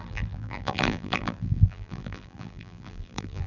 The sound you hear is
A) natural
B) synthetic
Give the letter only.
B